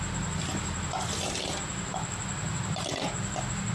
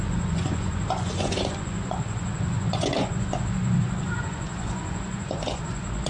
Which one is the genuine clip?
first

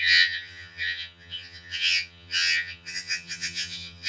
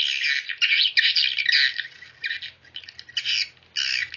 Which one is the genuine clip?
second